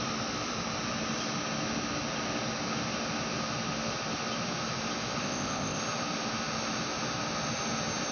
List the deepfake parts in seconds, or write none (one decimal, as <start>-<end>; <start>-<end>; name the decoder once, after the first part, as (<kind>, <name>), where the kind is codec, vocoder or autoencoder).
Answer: 5.2-5.8 (codec, ZipCodec)